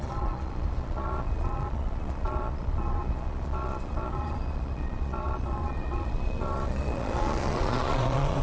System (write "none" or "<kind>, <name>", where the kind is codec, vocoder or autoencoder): vocoder, Vocos